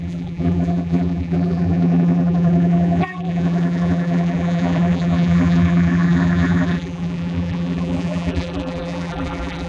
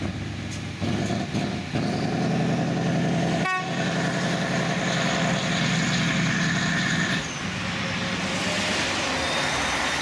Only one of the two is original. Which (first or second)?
second